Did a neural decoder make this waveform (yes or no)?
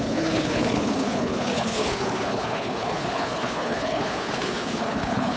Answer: yes